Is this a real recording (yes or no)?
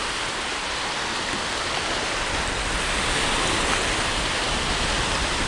yes